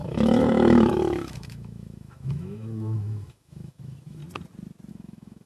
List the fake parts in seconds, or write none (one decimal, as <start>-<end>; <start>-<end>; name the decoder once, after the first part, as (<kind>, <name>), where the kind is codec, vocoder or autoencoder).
0.0-4.2 (autoencoder, DAC-VAE); 4.9-5.5